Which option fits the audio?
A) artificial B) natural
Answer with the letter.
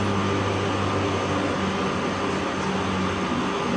B